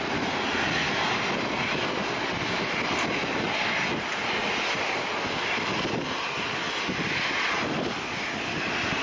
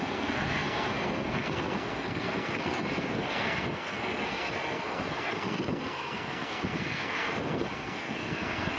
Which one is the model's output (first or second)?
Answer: second